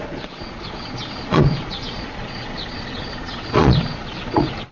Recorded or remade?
remade